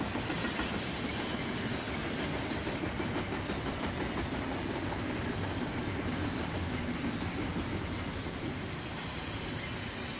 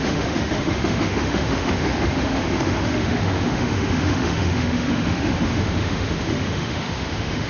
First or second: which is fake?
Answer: second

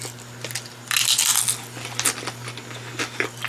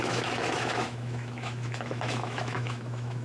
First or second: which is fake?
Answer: second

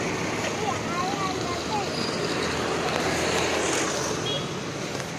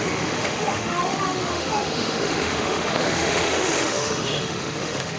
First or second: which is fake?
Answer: second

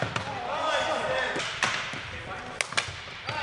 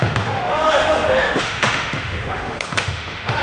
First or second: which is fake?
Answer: second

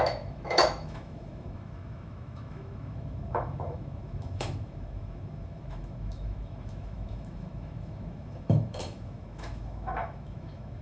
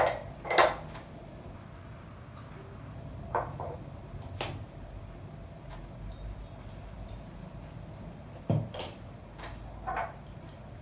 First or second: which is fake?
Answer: first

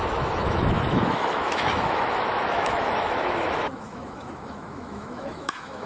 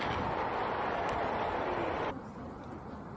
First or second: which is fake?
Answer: first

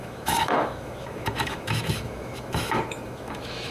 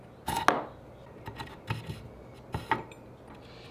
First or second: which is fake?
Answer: first